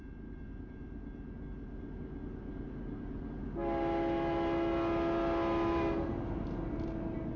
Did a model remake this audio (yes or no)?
no